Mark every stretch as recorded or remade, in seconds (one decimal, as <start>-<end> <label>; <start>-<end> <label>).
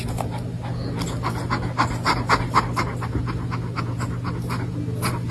0.0-5.3 recorded